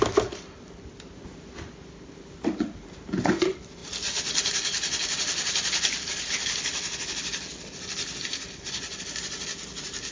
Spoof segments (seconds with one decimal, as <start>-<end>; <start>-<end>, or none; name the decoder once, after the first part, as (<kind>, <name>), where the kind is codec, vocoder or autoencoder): none